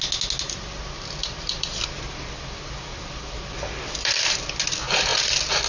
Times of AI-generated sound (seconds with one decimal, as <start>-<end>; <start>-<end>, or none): 1.2-4.4